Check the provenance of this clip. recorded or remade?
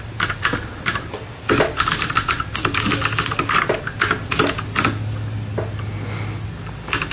recorded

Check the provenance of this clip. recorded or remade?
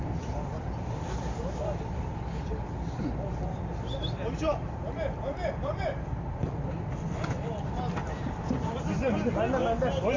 recorded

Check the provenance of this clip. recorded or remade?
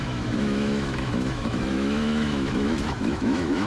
remade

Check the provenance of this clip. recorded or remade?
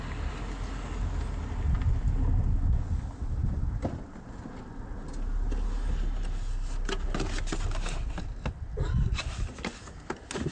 recorded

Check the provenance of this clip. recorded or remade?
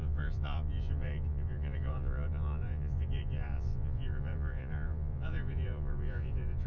remade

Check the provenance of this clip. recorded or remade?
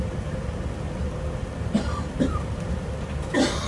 recorded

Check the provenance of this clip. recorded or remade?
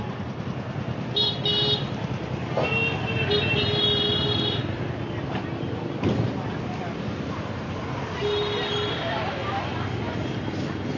recorded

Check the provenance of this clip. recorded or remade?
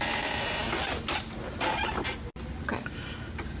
recorded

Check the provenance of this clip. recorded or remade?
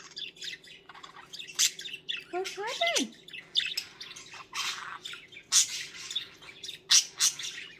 recorded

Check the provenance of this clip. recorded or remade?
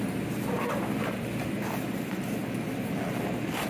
recorded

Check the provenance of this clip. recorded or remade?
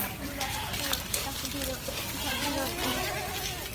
recorded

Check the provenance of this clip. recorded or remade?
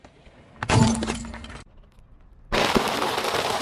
recorded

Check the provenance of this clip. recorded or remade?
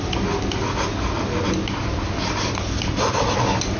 recorded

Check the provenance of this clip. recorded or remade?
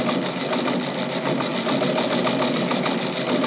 recorded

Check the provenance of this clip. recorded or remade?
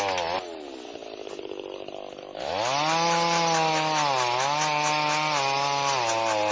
recorded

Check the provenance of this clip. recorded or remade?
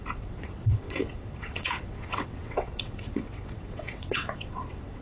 remade